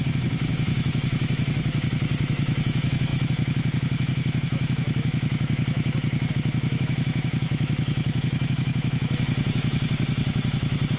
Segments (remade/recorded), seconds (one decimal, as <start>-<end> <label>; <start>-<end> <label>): 0.0-11.0 remade